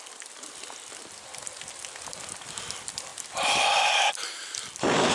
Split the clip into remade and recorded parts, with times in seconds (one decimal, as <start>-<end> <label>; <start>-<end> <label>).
0.0-5.1 recorded